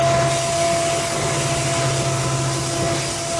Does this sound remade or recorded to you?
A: recorded